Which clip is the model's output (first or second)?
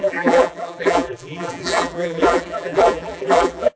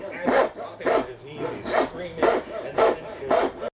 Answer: first